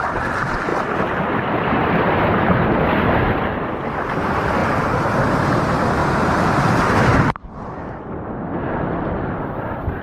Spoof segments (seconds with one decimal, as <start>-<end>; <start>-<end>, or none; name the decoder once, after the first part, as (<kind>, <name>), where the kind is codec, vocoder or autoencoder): none